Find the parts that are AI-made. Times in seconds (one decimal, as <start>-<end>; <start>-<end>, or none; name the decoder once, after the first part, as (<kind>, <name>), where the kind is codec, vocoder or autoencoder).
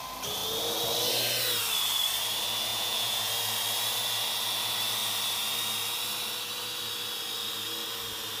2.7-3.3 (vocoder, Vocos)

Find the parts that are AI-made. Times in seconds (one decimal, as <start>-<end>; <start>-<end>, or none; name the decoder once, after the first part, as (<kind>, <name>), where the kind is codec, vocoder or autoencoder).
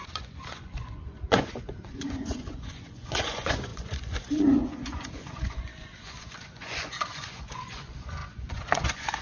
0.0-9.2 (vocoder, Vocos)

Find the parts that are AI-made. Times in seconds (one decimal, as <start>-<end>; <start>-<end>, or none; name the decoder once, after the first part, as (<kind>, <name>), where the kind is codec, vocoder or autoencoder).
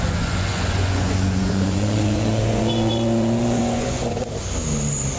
0.0-4.2 (vocoder, Vocos)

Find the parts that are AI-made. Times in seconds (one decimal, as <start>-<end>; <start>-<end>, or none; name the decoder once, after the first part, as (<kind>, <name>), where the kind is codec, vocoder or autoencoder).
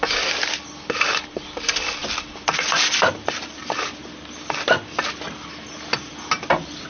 none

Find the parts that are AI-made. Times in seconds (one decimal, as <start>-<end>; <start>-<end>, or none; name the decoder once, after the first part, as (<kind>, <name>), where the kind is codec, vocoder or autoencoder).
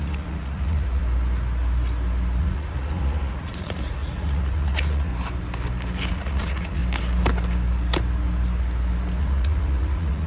0.0-1.0 (vocoder, Vocos); 2.4-5.1; 6.1-6.8; 9.2-10.3